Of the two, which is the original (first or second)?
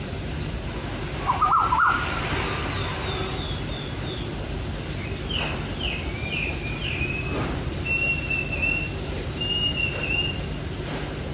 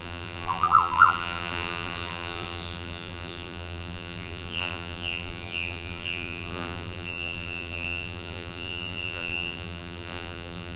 first